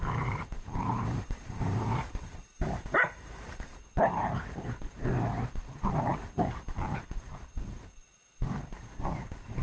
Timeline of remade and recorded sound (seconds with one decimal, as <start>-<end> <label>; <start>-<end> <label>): 0.0-6.1 remade; 6.1-6.7 recorded; 6.7-9.6 remade